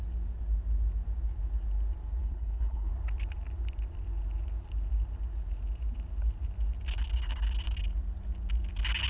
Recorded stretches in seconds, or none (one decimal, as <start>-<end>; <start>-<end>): 0.0-2.2; 2.9-9.1